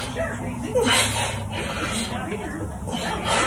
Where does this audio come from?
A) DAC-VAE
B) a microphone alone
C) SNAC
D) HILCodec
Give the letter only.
B